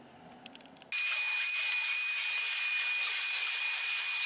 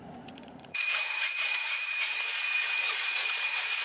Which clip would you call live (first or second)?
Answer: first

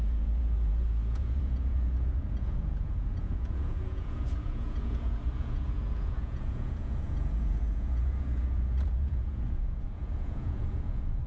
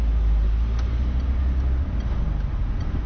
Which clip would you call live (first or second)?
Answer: second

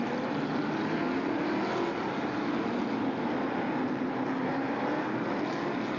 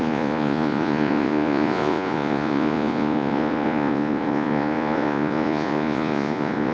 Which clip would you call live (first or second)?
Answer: first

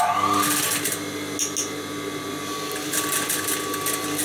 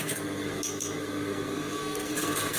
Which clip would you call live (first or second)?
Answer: first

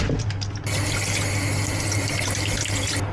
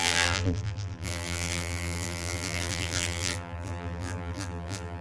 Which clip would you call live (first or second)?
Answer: first